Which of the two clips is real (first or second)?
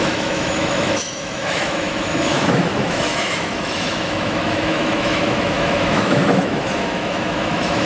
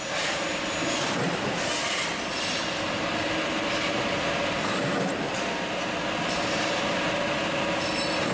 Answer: second